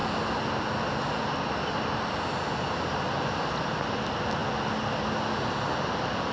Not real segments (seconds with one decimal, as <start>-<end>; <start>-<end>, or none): none